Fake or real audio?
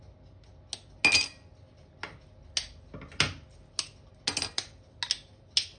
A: real